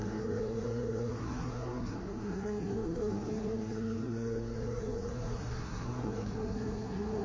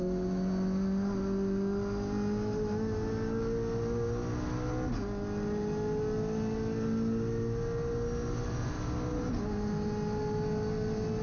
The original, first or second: second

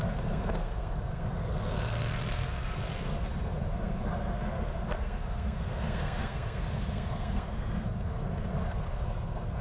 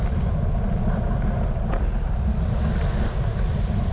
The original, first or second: second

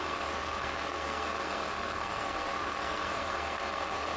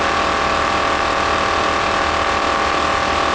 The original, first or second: second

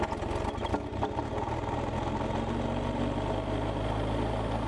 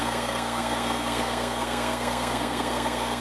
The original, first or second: first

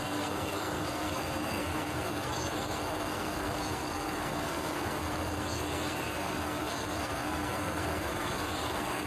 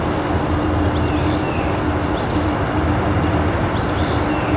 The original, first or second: second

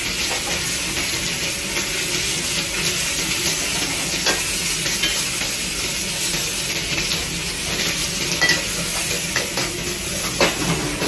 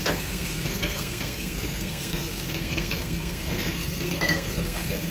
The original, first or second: first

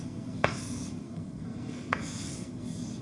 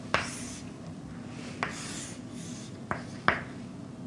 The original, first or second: second